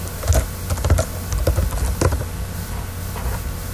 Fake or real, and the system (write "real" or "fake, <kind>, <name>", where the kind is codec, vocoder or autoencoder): real